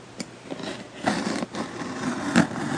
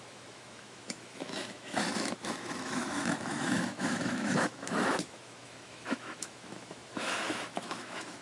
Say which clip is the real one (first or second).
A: first